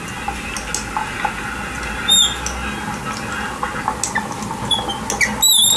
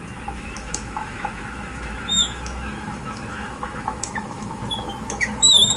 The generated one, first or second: second